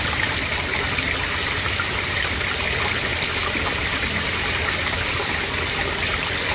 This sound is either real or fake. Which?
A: real